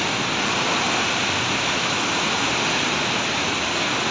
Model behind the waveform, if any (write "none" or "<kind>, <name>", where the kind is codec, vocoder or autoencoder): none